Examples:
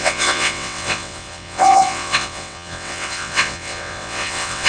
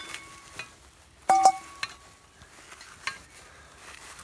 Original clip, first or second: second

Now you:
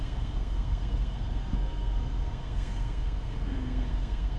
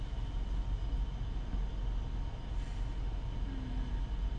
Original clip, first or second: second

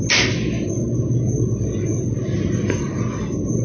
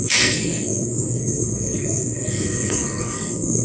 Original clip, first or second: first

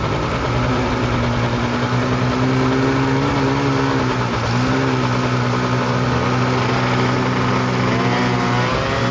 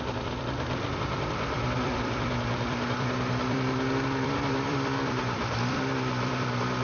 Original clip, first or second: first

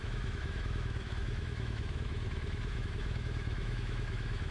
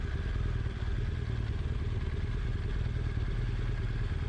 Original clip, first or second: second